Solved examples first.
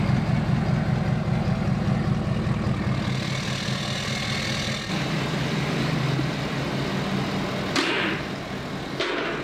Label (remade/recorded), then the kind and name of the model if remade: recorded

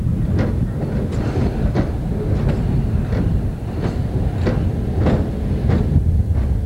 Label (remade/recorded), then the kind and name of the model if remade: recorded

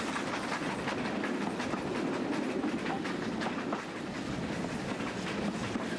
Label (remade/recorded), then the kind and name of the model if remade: recorded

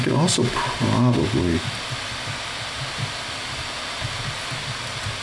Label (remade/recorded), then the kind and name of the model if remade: recorded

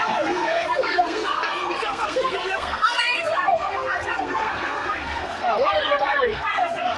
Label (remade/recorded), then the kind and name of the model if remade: remade, codec, SNAC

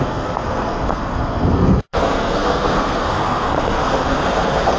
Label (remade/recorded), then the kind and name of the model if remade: remade, codec, SNAC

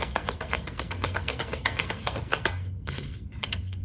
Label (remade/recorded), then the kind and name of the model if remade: remade, codec, SNAC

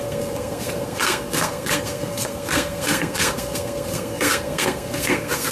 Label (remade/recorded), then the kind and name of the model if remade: remade, codec, SNAC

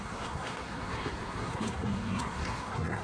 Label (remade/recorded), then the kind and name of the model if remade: remade, codec, SNAC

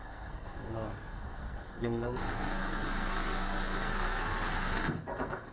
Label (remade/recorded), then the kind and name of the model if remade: remade, codec, SNAC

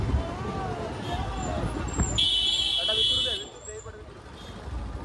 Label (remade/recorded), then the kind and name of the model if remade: recorded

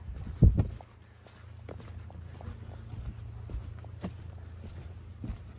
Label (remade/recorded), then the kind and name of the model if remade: recorded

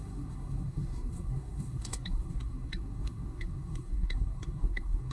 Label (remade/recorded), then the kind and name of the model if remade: remade, codec, SNAC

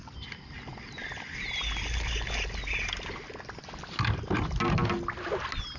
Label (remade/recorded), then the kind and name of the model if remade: recorded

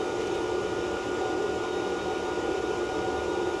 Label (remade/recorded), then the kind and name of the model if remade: recorded